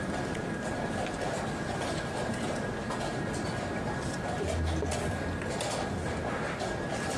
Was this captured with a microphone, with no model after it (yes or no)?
yes